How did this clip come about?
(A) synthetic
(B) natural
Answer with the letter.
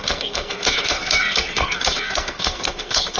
A